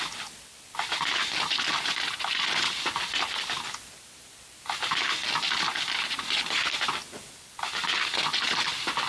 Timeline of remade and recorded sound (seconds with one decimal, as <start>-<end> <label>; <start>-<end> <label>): 0.0-9.1 recorded

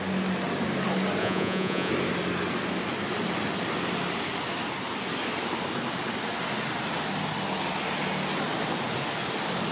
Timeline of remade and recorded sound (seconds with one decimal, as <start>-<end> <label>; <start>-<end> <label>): 0.0-1.2 recorded; 1.2-1.9 remade; 1.9-9.7 recorded

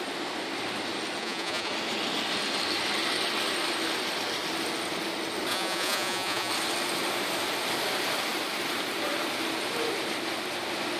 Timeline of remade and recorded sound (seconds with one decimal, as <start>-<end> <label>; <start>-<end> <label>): 0.0-1.2 recorded; 1.2-1.7 remade; 1.7-5.5 recorded; 5.5-6.5 remade; 6.5-11.0 recorded